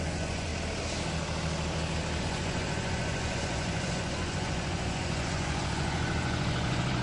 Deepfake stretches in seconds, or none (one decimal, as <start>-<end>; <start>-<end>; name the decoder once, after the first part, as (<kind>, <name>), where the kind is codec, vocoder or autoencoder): 0.0-0.5 (vocoder, Vocos); 2.2-7.0